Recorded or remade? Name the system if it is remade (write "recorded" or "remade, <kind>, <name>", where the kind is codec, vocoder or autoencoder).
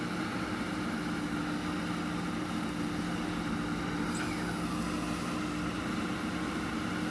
recorded